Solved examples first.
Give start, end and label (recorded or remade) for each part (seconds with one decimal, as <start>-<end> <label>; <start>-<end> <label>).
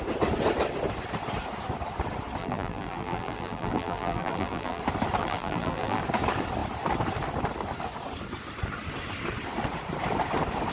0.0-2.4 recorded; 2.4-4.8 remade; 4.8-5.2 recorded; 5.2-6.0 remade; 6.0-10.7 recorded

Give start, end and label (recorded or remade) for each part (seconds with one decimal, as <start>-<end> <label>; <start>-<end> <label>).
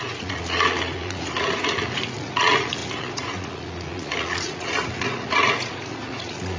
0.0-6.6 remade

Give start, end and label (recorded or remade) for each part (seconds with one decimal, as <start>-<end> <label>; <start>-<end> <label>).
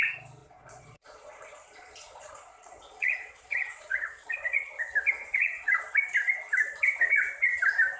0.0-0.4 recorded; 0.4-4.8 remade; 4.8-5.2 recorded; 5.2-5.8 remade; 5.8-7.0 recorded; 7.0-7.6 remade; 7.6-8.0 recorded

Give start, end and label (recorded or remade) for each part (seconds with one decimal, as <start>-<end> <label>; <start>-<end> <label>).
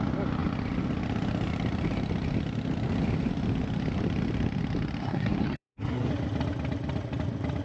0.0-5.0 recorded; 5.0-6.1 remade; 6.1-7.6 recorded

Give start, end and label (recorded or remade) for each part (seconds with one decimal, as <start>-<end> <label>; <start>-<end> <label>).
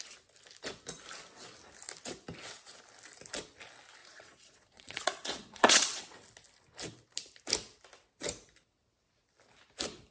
0.0-4.0 recorded; 4.0-6.0 remade; 6.0-10.1 recorded